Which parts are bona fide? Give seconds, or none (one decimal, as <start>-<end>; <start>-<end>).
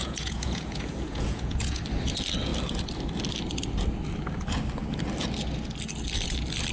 1.8-6.7